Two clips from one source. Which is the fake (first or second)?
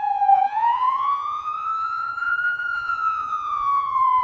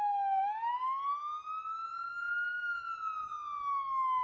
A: first